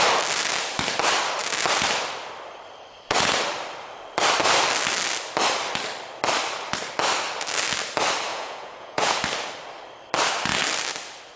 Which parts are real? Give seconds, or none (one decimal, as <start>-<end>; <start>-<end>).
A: 0.0-8.3; 9.2-11.4